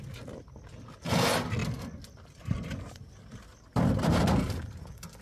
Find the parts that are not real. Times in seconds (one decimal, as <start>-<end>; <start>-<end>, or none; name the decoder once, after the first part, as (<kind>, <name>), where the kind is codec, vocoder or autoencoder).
none